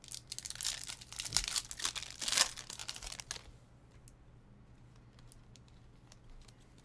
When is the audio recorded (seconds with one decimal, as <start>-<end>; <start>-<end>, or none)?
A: 0.0-6.8